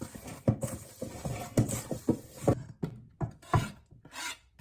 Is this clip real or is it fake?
real